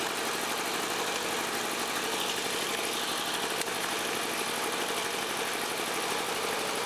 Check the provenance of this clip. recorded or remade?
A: recorded